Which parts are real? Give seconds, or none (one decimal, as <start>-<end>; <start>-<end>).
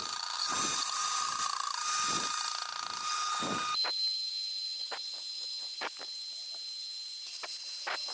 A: 0.0-8.1